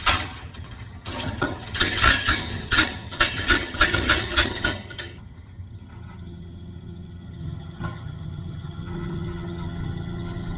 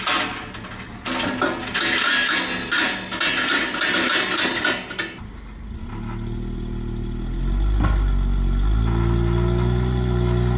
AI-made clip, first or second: first